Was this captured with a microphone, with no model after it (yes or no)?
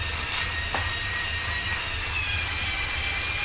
yes